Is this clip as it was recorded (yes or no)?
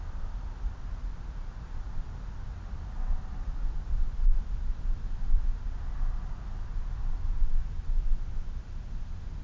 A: yes